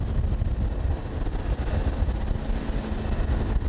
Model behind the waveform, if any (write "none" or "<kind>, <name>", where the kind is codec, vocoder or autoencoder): none